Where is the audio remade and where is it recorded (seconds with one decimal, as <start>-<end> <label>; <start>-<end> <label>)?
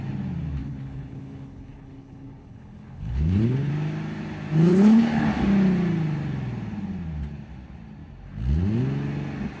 0.0-0.6 recorded; 0.6-3.7 remade; 3.7-4.7 recorded; 4.7-5.3 remade; 5.3-9.6 recorded